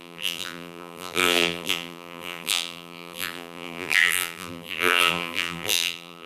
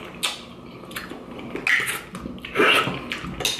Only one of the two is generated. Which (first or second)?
first